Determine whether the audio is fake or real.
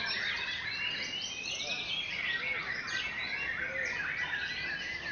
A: real